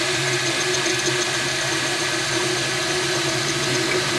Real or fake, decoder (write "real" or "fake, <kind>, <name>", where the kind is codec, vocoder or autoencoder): real